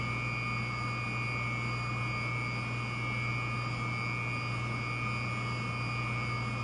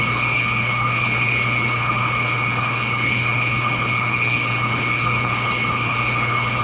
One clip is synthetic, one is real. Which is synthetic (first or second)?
second